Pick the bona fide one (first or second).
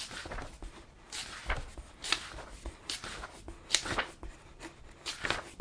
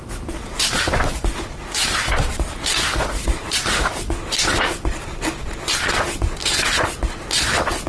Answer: first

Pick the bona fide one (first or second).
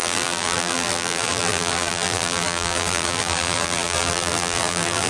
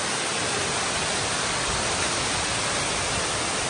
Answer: second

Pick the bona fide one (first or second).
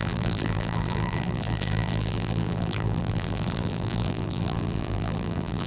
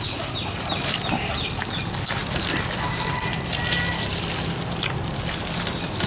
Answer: second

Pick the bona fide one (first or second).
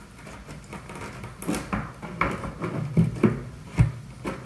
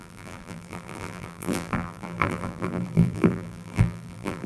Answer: first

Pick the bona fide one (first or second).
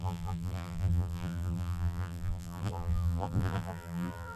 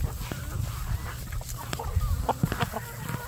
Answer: second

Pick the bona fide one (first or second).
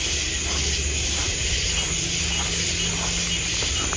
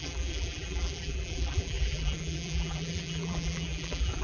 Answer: first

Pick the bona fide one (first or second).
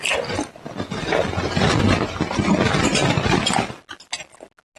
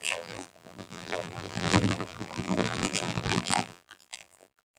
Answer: first